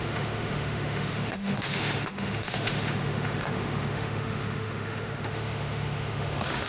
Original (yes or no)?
no